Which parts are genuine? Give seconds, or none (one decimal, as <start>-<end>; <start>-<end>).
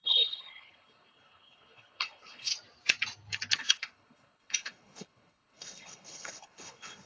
2.5-3.6